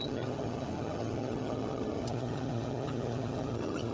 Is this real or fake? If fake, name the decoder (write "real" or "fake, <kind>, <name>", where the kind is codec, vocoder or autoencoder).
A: fake, vocoder, HiFi-GAN